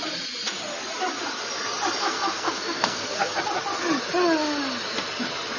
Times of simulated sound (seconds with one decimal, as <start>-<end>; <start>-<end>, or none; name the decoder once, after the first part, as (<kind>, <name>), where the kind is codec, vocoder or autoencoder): 2.0-3.4 (codec, SNAC)